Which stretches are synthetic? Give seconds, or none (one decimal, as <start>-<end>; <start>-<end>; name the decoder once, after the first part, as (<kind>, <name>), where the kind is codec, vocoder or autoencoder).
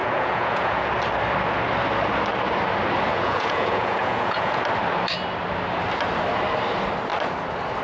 0.0-0.9 (vocoder, Vocos); 3.1-4.6